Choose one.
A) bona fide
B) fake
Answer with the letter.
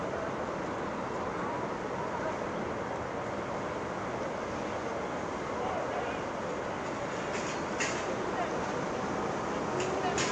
A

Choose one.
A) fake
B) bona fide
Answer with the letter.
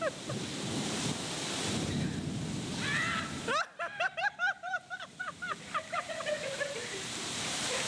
A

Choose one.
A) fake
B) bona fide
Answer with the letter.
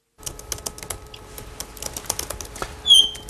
B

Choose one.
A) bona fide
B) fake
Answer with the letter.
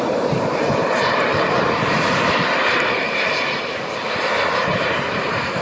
B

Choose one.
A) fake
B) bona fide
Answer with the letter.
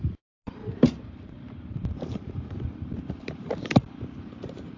A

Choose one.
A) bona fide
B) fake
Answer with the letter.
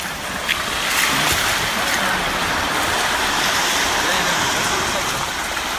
B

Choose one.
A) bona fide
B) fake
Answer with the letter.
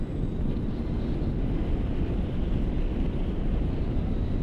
A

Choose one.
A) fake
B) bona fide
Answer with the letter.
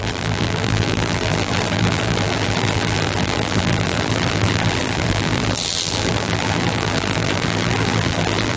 A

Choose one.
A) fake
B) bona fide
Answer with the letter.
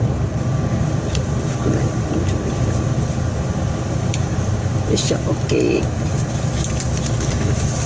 A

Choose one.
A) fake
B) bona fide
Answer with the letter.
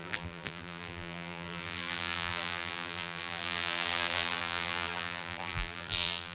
A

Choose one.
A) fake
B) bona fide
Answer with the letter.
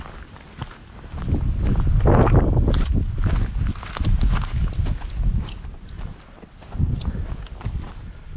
B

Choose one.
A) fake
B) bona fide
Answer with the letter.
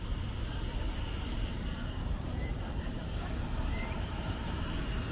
A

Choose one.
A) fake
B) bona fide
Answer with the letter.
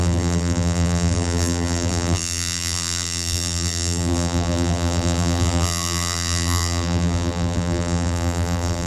A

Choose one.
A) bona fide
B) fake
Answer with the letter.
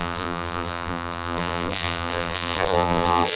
B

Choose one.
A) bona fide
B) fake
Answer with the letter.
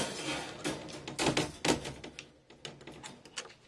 A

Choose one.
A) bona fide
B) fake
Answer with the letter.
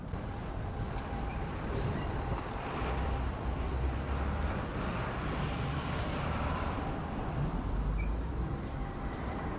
B